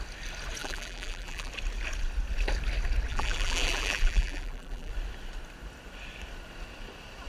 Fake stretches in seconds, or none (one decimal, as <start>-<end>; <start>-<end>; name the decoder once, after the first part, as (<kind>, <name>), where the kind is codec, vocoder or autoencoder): 0.6-1.5 (vocoder, BigVGAN v2); 3.1-4.9